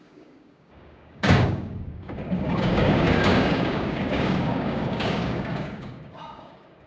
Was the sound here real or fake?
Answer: fake